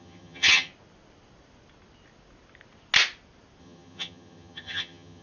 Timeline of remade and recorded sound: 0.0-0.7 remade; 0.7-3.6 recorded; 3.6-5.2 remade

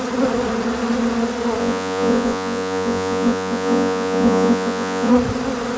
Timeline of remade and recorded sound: 0.0-1.6 recorded; 1.6-5.1 remade; 5.1-5.8 recorded

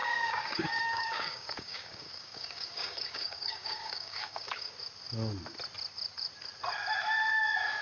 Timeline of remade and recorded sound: 0.0-4.7 remade; 4.7-7.8 recorded